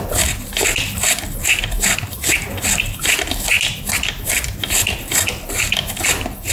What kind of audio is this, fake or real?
real